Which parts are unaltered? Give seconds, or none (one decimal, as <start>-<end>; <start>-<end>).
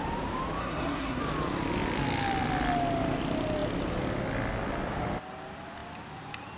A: 0.0-0.6; 1.2-6.6